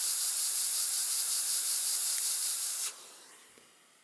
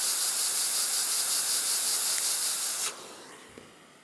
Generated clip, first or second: first